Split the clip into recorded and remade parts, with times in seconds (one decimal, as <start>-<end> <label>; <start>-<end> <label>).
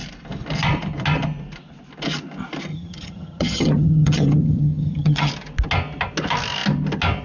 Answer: 0.0-2.7 recorded; 2.7-5.3 remade; 5.3-7.2 recorded